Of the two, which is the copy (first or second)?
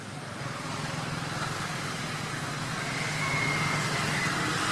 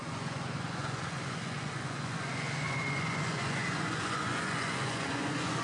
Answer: second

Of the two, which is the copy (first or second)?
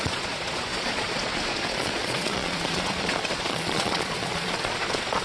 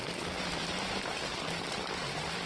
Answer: first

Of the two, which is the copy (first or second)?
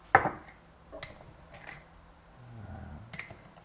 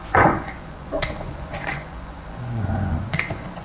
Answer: second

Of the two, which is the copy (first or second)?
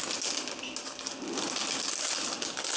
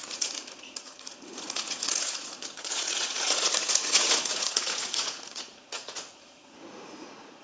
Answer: second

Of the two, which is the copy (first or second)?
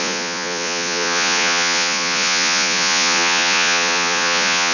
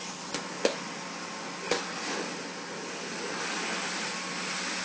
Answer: first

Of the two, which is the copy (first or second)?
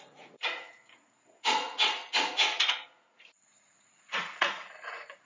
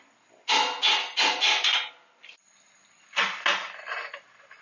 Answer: first